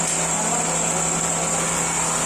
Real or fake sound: real